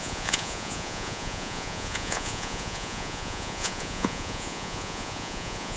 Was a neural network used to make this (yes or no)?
yes